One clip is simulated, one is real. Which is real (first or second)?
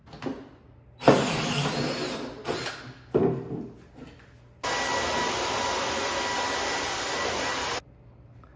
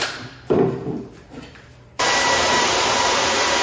first